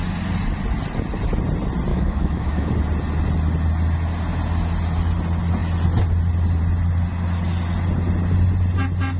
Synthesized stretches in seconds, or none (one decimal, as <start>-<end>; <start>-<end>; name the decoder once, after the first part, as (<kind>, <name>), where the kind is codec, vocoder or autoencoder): 1.9-2.7 (autoencoder, DAC-VAE)

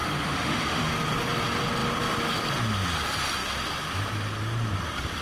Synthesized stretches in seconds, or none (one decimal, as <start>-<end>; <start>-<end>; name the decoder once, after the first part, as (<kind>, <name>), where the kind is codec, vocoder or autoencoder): 0.0-0.9 (autoencoder, DAC-VAE)

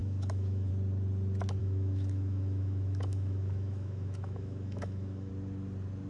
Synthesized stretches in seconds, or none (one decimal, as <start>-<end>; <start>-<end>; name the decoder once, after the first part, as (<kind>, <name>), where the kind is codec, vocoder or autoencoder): 0.0-0.7 (autoencoder, DAC-VAE); 1.6-5.3

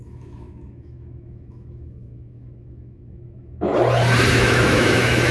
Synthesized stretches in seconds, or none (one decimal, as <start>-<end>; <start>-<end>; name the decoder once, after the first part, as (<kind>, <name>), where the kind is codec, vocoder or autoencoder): 0.0-3.7 (autoencoder, DAC-VAE); 4.3-5.3

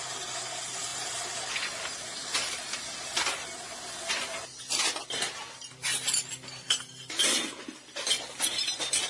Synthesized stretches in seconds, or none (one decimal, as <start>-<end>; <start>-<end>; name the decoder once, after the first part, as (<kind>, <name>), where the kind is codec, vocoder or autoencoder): none

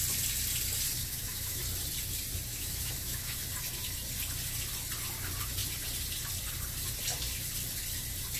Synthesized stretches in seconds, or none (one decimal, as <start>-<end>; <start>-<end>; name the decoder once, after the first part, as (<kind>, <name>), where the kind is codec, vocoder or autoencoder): 1.0-1.6 (autoencoder, DAC-VAE); 2.5-3.4

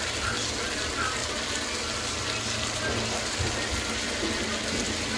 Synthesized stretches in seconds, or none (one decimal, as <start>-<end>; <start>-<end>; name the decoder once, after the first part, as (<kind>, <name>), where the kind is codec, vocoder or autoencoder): none

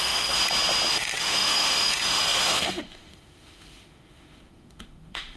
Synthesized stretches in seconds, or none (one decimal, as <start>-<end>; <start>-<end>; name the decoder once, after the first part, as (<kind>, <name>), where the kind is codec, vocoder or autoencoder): 0.0-0.4 (autoencoder, DAC-VAE); 0.9-5.4